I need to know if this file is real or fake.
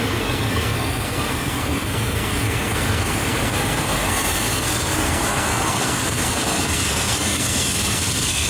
fake